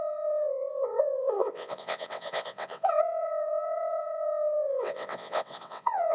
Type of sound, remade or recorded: remade